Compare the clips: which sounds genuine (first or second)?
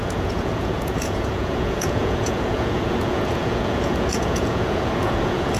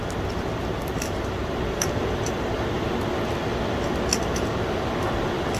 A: second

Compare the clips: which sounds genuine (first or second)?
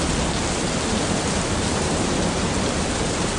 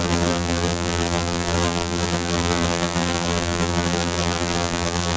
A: first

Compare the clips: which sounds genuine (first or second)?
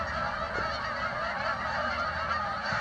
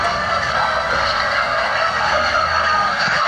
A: first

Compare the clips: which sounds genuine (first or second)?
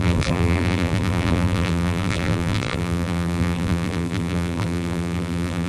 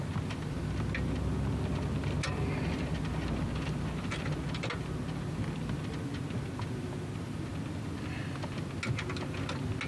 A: second